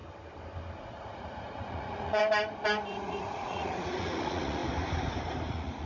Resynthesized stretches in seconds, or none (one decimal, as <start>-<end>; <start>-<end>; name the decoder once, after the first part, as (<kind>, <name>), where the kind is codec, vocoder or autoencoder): 0.8-2.2 (vocoder, Vocos); 2.9-4.6; 5.5-5.9